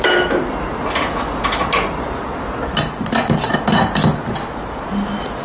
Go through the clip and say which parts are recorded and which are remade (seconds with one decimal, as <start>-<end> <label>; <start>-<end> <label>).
0.0-5.4 recorded